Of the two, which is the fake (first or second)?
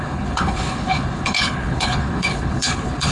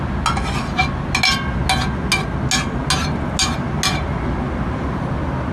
first